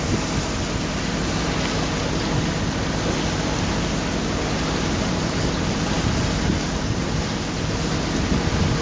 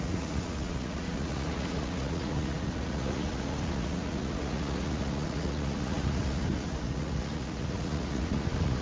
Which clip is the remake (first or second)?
second